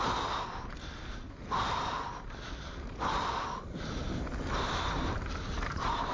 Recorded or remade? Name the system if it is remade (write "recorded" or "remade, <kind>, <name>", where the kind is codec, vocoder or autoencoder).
recorded